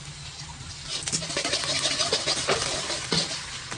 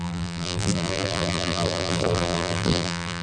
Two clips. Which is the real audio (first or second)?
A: first